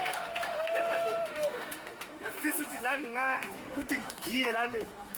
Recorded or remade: remade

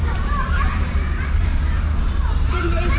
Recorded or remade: remade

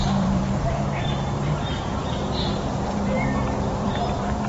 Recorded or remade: remade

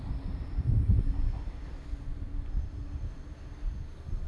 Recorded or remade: recorded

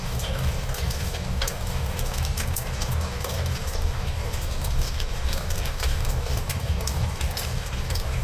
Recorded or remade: remade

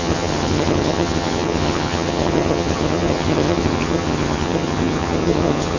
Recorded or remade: remade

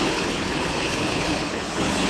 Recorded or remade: remade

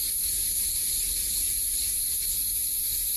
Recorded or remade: recorded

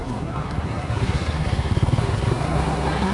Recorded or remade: remade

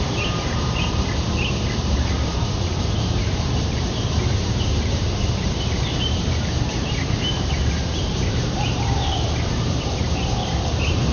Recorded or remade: remade